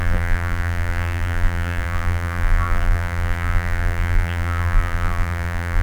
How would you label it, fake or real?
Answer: fake